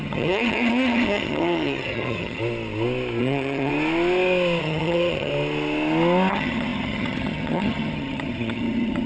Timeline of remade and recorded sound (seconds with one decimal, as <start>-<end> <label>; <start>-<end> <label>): 0.0-2.4 remade; 2.4-3.2 recorded; 3.2-3.7 remade; 3.7-4.6 recorded; 4.6-5.3 remade; 5.3-6.3 recorded; 6.3-9.1 remade